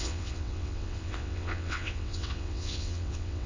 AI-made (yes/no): yes